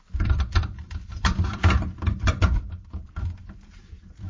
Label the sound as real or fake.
fake